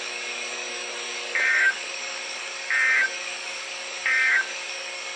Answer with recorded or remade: remade